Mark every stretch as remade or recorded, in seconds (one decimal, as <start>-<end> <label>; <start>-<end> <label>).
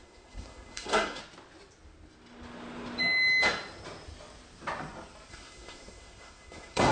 0.0-1.2 remade; 1.2-5.3 recorded; 5.3-6.9 remade